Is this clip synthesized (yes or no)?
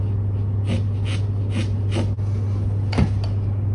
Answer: no